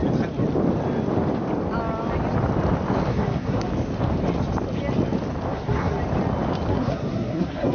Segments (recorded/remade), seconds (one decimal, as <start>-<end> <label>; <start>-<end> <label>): 0.0-3.1 recorded; 3.1-3.7 remade; 3.7-5.5 recorded; 5.5-6.0 remade; 6.0-6.7 recorded; 6.7-7.7 remade